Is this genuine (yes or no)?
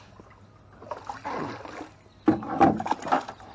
yes